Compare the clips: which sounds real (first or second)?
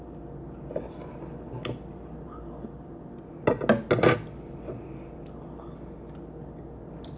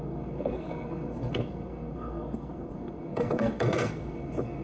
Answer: first